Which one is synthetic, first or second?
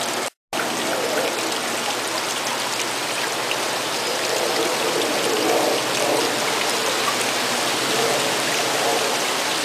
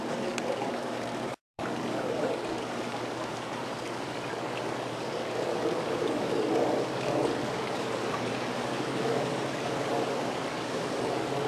second